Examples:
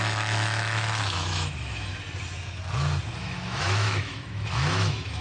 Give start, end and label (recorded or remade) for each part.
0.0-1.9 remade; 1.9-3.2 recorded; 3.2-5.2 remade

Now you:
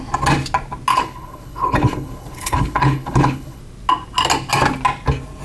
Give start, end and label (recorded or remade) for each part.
0.0-0.9 recorded; 0.9-3.6 remade; 3.6-5.4 recorded

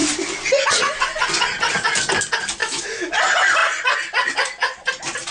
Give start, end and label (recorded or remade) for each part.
0.0-2.6 recorded; 2.6-3.1 remade; 3.1-5.3 recorded